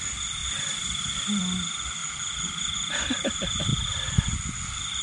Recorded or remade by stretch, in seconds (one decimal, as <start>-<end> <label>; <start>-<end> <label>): 0.0-0.4 recorded; 0.4-1.4 remade; 1.4-5.0 recorded